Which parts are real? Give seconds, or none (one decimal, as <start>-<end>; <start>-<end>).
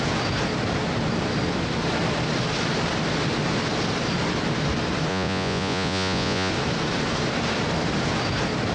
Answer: 0.0-5.1; 6.5-8.7